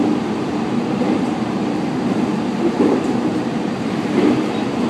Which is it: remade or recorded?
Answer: remade